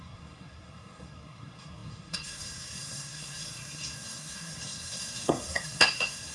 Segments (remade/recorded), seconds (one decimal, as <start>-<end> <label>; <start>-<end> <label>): 0.0-6.3 remade